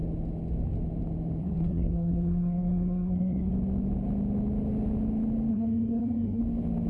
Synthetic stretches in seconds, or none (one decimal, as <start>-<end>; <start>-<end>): 1.4-3.5; 5.5-6.4